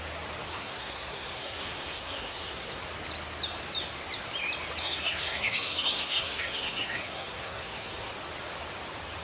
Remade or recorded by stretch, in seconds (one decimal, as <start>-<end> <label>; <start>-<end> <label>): 0.0-0.5 recorded; 0.5-2.8 remade; 2.8-4.8 recorded; 4.8-8.1 remade; 8.1-9.2 recorded